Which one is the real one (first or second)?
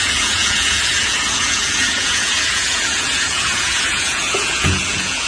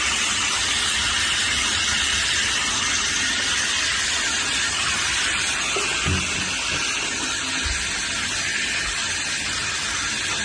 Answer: second